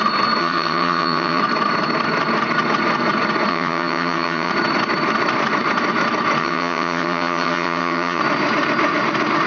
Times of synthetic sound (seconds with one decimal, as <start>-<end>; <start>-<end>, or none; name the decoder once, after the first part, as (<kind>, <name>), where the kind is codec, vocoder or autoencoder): 0.4-1.4 (vocoder, HiFi-GAN); 3.5-4.5; 6.4-8.2